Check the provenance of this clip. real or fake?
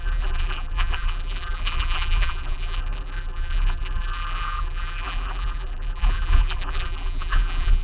fake